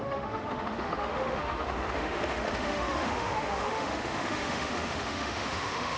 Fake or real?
fake